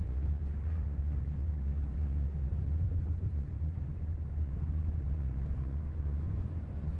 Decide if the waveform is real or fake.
fake